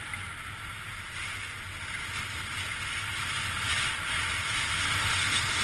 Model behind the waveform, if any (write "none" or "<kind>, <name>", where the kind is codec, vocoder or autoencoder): none